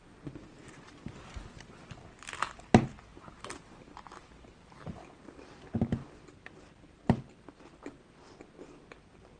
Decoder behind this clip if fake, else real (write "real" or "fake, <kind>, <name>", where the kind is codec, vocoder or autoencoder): real